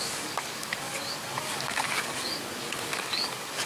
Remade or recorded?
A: remade